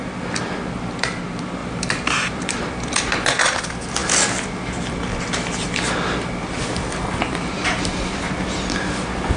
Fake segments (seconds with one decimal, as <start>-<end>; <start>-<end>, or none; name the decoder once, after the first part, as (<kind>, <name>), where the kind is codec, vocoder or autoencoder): 1.6-3.6 (vocoder, BigVGAN v2); 4.0-4.9; 7.2-8.3